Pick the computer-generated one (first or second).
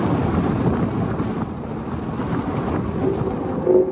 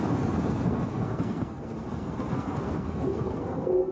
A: second